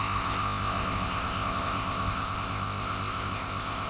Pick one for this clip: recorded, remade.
remade